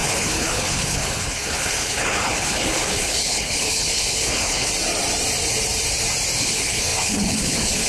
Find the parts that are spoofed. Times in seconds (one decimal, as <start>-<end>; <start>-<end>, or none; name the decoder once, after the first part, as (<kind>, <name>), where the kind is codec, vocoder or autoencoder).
0.0-4.7 (codec, HILCodec); 6.4-7.9